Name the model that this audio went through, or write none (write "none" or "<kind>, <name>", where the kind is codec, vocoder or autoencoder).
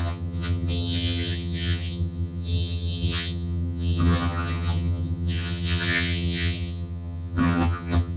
vocoder, HiFi-GAN